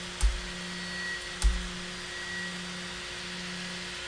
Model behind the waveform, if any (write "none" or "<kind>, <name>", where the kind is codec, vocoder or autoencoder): none